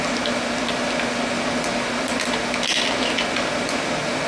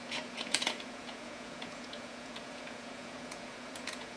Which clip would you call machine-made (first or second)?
second